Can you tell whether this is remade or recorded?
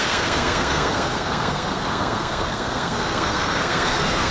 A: remade